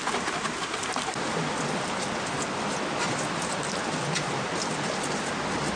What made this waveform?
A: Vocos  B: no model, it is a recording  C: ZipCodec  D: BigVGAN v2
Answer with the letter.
B